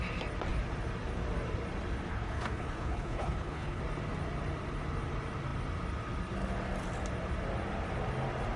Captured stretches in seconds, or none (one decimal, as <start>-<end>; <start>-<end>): 0.0-2.1; 3.8-8.6